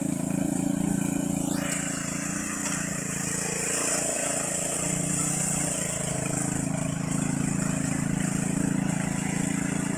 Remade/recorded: remade